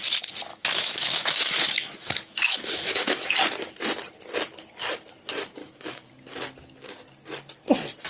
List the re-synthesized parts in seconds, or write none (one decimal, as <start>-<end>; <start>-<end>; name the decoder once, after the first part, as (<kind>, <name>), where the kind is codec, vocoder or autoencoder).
0.5-3.3 (autoencoder, DAC-VAE); 5.6-6.1